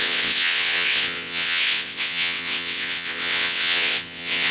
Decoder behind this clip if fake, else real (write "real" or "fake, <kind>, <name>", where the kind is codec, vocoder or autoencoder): fake, vocoder, WaveNeXt